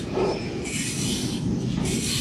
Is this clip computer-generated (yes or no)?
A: no